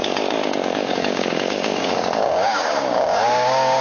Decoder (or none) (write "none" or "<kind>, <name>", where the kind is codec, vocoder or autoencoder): codec, DAC